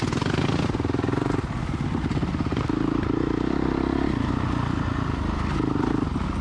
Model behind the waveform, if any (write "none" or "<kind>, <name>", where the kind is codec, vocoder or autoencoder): none